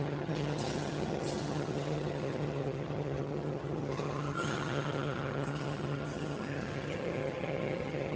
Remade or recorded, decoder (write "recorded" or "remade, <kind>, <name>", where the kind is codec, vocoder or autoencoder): remade, vocoder, HiFi-GAN